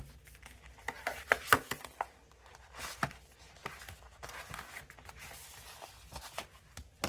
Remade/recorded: recorded